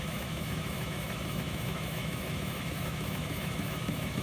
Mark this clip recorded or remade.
remade